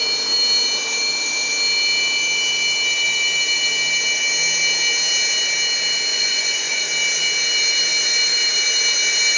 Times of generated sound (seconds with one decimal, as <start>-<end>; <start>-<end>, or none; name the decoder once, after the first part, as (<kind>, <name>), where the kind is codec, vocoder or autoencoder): 6.1-6.8 (vocoder, Vocos)